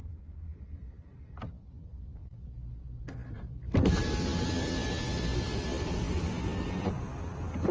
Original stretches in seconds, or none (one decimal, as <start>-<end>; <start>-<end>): 0.0-7.7